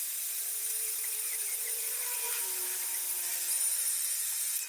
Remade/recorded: remade